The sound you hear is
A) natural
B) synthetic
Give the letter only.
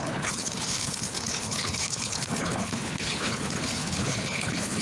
B